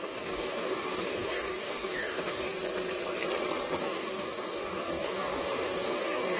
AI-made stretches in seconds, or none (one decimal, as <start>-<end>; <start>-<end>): 0.0-2.6; 3.8-6.4

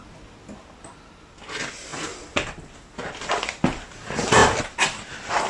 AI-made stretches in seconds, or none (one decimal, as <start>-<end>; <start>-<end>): none